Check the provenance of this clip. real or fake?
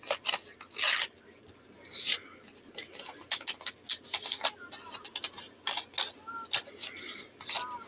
real